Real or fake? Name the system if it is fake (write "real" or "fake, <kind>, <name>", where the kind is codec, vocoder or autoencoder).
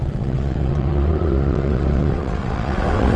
fake, vocoder, WaveNeXt